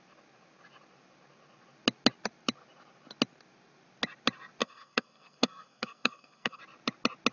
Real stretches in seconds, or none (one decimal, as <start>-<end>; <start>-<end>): 0.0-4.6; 6.6-7.3